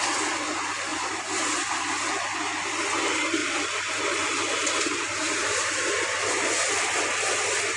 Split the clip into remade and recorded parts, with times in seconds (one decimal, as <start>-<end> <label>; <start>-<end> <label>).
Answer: 0.0-0.9 recorded; 0.9-1.7 remade; 1.7-3.4 recorded; 3.4-6.0 remade; 6.0-7.8 recorded